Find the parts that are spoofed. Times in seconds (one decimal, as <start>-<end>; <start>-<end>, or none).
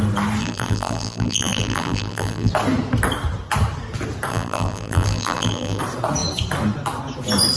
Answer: 0.4-2.5; 4.3-5.8